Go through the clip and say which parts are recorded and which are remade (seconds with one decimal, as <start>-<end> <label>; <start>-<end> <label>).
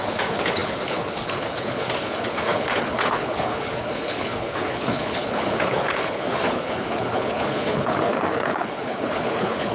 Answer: 0.0-9.7 remade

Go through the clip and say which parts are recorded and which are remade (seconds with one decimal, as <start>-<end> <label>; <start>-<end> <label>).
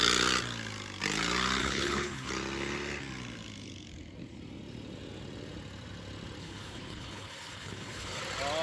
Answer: 0.0-1.6 recorded; 1.6-2.3 remade; 2.3-6.4 recorded; 6.4-8.2 remade; 8.2-8.6 recorded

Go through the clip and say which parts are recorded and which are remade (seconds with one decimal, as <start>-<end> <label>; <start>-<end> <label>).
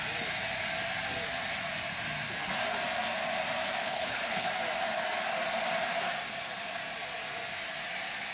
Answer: 0.0-3.8 recorded; 3.8-4.5 remade; 4.5-8.3 recorded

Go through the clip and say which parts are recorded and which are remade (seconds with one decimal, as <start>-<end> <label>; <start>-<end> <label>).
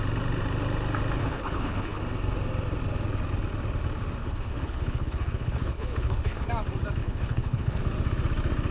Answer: 0.0-1.2 recorded; 1.2-2.0 remade; 2.0-4.2 recorded; 4.2-6.5 remade; 6.5-7.0 recorded; 7.0-7.8 remade; 7.8-8.7 recorded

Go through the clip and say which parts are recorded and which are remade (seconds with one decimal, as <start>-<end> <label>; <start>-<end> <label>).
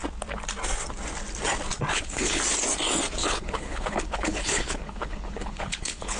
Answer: 0.0-1.9 recorded; 1.9-2.4 remade; 2.4-3.2 recorded; 3.2-6.2 remade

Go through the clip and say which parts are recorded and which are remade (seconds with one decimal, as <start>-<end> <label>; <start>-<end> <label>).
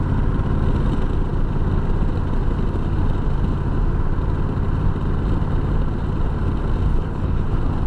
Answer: 0.0-6.9 recorded; 6.9-7.5 remade; 7.5-7.9 recorded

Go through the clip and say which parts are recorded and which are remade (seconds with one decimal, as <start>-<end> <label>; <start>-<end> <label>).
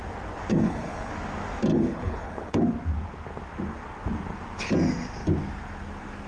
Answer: 0.0-0.5 recorded; 0.5-1.1 remade; 1.1-1.7 recorded; 1.7-2.6 remade; 2.6-6.3 recorded